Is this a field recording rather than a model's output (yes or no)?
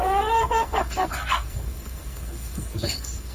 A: no